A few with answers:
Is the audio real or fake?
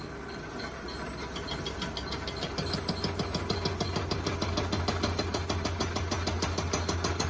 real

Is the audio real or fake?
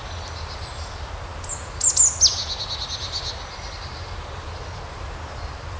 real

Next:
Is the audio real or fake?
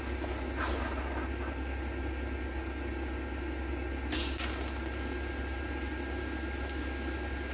real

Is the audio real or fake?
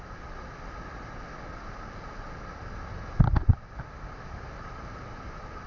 real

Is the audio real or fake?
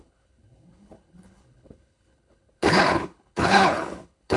fake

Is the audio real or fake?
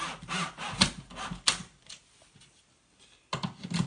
real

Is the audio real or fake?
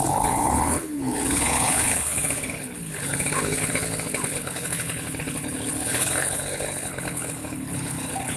fake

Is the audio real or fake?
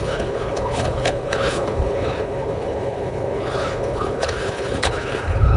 fake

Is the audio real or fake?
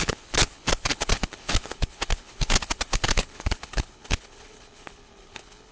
fake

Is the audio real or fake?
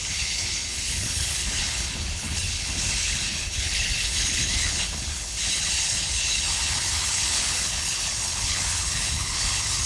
fake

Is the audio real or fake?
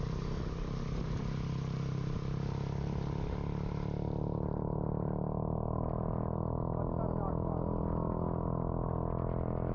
real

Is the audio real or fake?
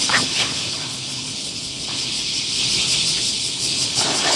fake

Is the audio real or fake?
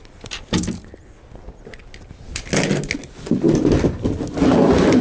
real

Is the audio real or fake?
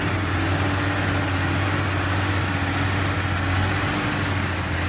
real